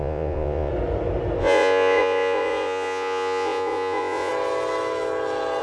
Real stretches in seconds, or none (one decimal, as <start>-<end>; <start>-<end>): 0.7-1.4; 4.3-5.6